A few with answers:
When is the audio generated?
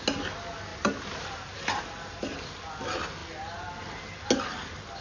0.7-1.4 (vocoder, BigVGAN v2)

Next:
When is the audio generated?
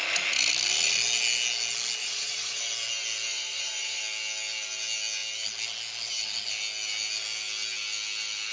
2.0-2.6 (vocoder, Vocos); 3.3-4.0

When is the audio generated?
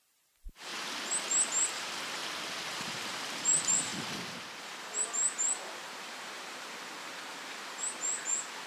0.0-0.7 (vocoder, BigVGAN v2); 1.7-2.2; 2.7-3.9; 4.6-8.7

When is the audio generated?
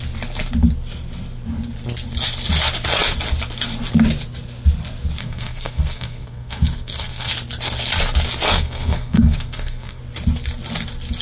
5.2-7.3 (codec, SNAC); 8.5-10.0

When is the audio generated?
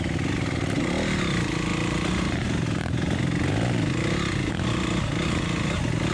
none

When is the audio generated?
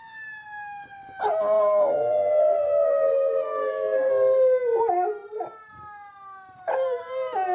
2.4-4.1 (codec, SNAC)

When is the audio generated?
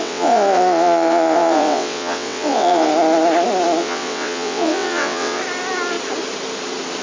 0.0-2.9 (vocoder, WaveNeXt); 3.8-5.4